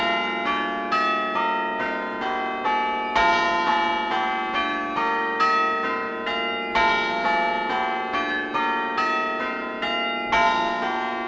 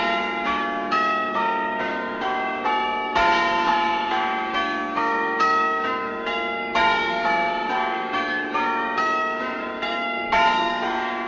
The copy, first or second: second